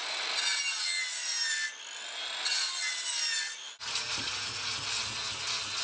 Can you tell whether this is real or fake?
real